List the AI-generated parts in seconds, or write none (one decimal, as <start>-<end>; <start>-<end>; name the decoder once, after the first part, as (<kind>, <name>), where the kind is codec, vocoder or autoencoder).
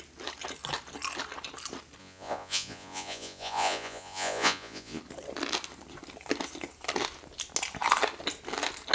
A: 2.0-5.0 (vocoder, Vocos)